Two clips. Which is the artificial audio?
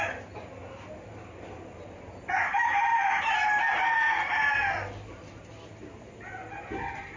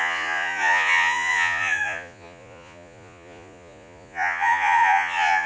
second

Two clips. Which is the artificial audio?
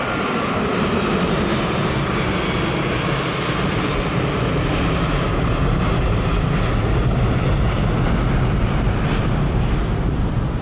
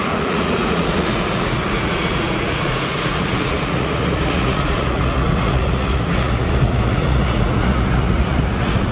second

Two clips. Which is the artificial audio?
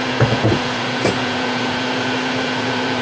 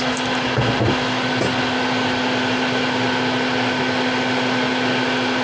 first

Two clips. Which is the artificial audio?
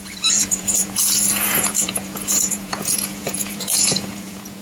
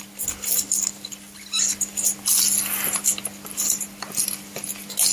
first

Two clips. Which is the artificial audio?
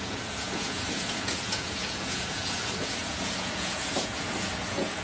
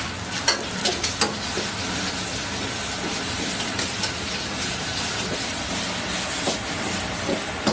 first